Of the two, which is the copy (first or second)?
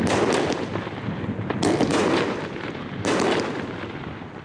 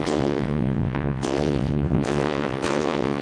second